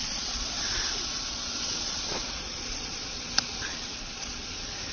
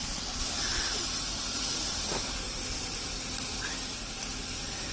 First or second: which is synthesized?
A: first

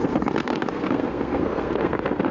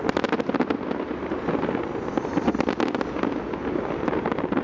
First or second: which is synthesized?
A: first